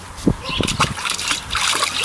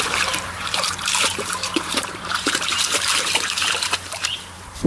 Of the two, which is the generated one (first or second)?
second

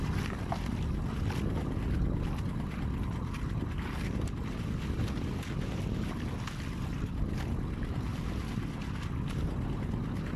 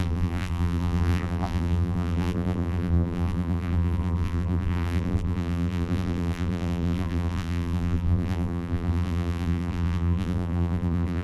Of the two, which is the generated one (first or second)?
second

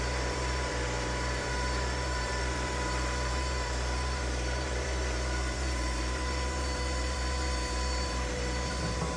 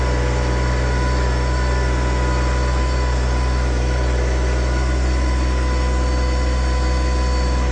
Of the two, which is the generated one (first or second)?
first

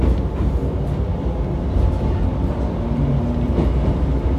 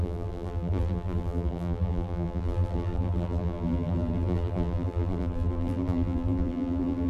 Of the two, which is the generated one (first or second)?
second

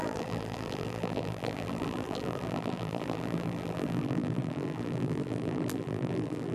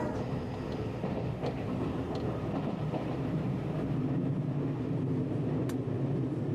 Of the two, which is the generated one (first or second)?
first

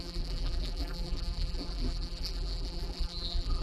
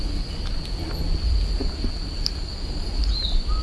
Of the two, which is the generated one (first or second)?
first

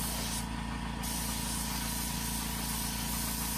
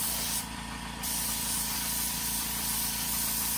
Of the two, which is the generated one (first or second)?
second